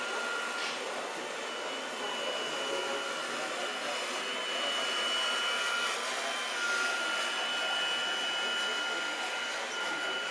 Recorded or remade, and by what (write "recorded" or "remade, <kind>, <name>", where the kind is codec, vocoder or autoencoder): recorded